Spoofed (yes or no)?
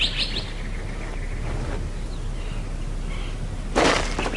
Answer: no